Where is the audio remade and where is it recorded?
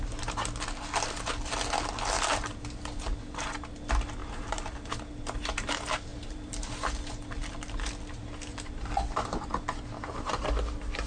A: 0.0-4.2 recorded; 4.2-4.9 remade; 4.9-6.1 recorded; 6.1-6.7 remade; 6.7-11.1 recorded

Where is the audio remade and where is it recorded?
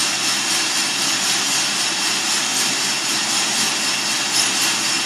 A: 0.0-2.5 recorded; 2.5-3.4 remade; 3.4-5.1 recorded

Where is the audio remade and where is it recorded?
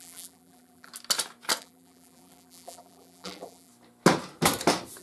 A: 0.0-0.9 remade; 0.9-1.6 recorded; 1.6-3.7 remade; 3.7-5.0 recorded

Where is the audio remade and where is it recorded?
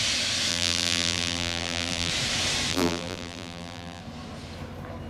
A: 0.0-0.5 recorded; 0.5-2.1 remade; 2.1-2.7 recorded; 2.7-4.0 remade; 4.0-5.1 recorded